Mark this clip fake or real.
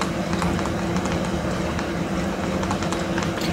real